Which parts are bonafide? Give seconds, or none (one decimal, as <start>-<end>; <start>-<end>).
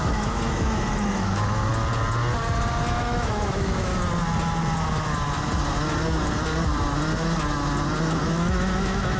1.7-3.0; 3.9-8.0